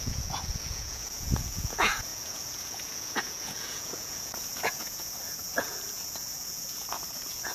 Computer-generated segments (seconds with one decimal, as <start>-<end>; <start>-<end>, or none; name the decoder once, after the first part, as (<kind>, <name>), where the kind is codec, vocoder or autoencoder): 0.0-7.5 (vocoder, Vocos)